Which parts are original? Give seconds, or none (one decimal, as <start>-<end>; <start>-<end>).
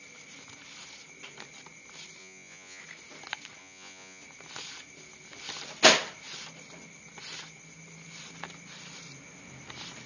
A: 0.0-2.2; 2.8-3.6; 4.2-10.1